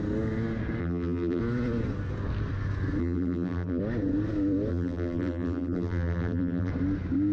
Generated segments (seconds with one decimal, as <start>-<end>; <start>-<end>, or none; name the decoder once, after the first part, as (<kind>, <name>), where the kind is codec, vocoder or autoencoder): 0.8-1.4 (vocoder, BigVGAN v2); 3.0-3.8; 4.7-6.7

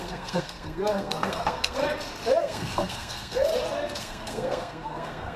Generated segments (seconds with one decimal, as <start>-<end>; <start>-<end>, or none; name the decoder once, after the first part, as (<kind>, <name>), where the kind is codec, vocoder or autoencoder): 0.0-1.8 (codec, SNAC); 2.4-3.5; 4.0-5.4

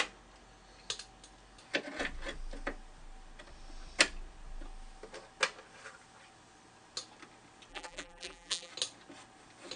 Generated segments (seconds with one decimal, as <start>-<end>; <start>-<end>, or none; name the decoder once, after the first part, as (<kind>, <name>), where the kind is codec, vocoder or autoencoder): 7.7-8.7 (vocoder, BigVGAN v2)

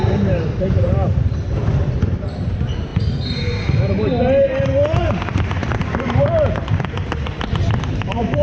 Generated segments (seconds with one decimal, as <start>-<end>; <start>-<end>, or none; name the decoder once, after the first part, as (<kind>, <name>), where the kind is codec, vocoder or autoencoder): 0.0-2.9 (vocoder, BigVGAN v2); 5.0-8.4